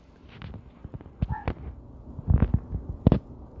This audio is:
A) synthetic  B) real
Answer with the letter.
B